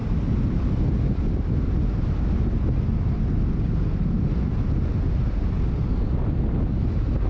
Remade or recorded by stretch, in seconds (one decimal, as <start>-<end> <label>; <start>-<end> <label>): 0.0-7.3 recorded